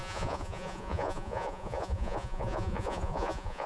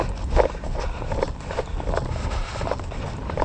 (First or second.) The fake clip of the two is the first